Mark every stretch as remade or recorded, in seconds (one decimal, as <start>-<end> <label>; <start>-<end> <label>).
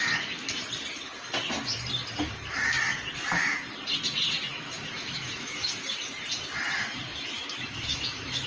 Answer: 0.0-4.5 recorded; 4.5-5.7 remade; 5.7-7.1 recorded; 7.1-8.5 remade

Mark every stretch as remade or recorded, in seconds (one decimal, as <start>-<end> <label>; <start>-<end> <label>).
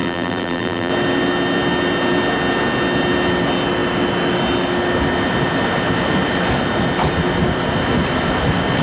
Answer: 0.0-0.9 remade; 0.9-8.8 recorded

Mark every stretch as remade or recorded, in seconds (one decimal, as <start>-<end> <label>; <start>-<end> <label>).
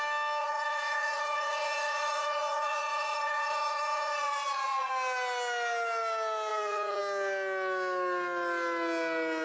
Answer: 0.0-0.4 recorded; 0.4-4.9 remade; 4.9-6.5 recorded; 6.5-7.0 remade; 7.0-9.4 recorded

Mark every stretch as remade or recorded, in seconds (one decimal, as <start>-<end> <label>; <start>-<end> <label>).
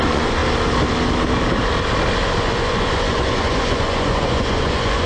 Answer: 0.0-0.4 remade; 0.4-2.4 recorded; 2.4-5.1 remade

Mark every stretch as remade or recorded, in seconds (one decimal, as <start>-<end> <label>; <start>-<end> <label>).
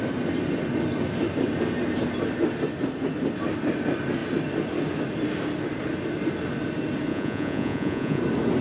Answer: 0.0-7.1 recorded; 7.1-8.2 remade; 8.2-8.6 recorded